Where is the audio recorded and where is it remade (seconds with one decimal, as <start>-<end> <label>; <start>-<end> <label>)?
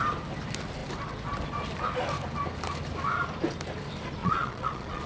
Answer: 0.0-4.2 recorded; 4.2-5.1 remade